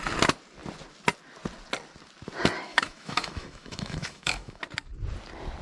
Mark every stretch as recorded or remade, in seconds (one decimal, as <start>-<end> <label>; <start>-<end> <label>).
0.0-2.7 recorded; 2.7-4.6 remade; 4.6-5.6 recorded